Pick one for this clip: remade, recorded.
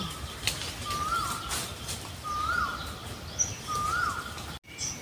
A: recorded